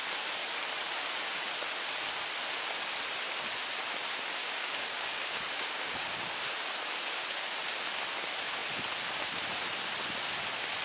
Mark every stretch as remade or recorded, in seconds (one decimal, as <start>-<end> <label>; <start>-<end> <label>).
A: 0.0-4.4 recorded; 4.4-6.5 remade; 6.5-10.8 recorded